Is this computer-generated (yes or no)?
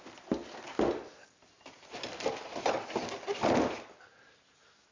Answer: no